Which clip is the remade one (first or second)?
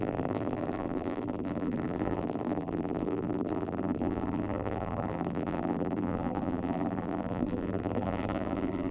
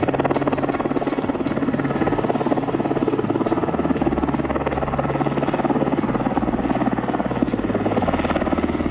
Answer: first